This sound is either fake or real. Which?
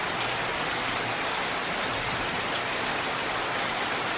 real